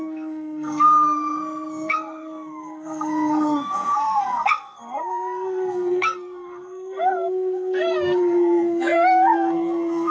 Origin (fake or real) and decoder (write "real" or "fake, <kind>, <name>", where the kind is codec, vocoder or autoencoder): fake, codec, SNAC